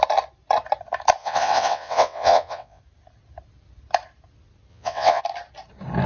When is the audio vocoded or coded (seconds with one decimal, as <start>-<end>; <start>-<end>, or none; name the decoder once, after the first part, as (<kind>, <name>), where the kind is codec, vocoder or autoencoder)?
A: 1.2-2.8 (vocoder, WaveNeXt); 4.7-5.2